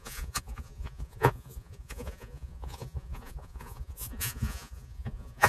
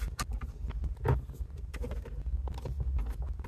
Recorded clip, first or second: second